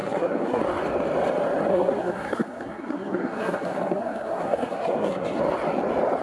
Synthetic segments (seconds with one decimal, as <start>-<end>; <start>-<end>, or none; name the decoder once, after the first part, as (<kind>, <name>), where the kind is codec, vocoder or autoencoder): 0.0-0.6 (codec, SNAC); 1.7-5.4